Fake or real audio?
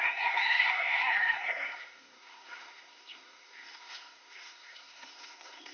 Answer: fake